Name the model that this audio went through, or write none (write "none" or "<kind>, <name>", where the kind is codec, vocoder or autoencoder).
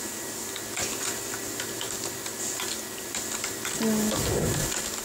none